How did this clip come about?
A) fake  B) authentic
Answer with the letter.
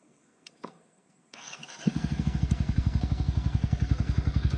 A